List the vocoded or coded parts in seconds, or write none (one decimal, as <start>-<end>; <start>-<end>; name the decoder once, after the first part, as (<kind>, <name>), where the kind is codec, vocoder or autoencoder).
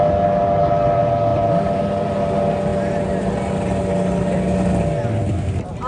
1.3-2.1 (vocoder, BigVGAN v2)